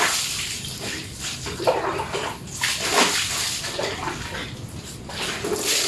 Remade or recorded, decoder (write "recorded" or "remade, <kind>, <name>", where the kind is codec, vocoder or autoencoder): recorded